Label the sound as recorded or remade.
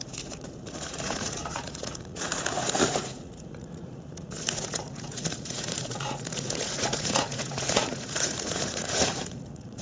remade